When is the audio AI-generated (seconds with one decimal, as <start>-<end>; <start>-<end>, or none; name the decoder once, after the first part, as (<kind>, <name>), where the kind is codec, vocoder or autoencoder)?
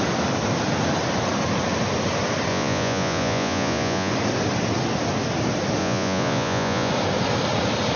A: 2.5-4.1 (vocoder, Vocos); 5.8-6.9